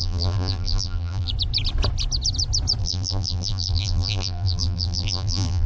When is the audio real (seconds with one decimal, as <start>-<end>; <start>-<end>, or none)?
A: 1.3-2.8